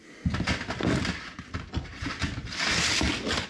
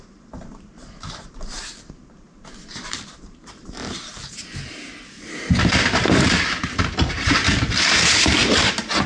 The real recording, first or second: first